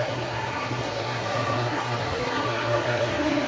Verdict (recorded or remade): remade